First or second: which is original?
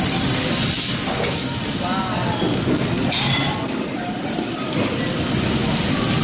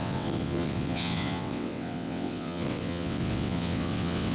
first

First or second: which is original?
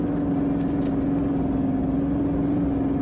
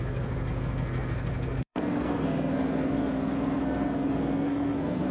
first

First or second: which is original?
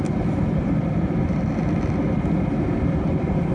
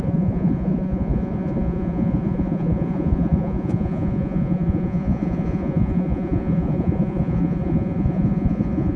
first